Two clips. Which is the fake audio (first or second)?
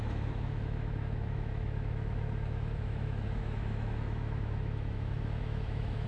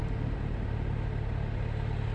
first